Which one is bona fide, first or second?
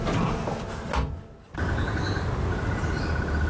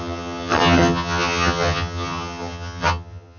first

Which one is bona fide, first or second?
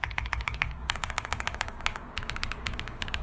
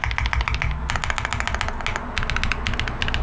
second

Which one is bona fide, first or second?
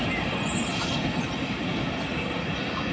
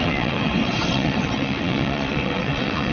first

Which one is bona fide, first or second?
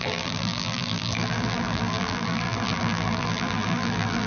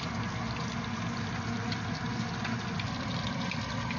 second